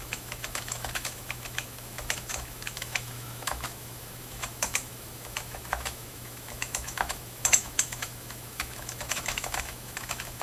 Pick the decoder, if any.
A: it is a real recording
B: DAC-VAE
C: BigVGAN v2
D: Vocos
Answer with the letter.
B